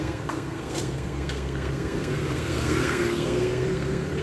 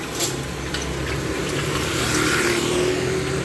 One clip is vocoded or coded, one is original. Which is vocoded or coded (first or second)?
first